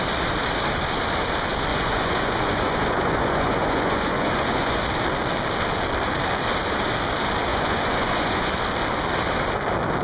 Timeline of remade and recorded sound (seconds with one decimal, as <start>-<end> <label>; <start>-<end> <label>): 0.0-1.7 recorded; 1.7-4.8 remade; 4.8-7.5 recorded; 7.5-8.5 remade; 8.5-10.0 recorded